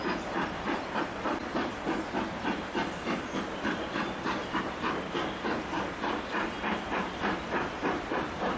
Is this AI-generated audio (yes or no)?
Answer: yes